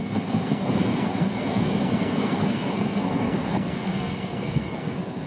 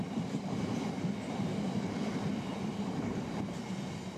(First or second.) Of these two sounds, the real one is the second